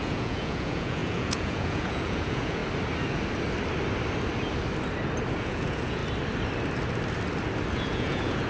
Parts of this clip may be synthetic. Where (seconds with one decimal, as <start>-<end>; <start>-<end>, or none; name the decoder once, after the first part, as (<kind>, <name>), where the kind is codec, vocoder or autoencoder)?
0.0-2.6 (vocoder, Vocos); 5.3-6.0; 7.7-8.5